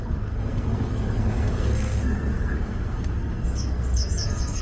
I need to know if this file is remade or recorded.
remade